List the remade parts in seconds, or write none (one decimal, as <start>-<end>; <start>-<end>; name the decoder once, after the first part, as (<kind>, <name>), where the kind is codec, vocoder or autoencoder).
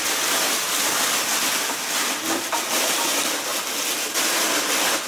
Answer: none